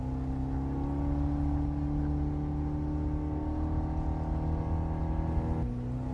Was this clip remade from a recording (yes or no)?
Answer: no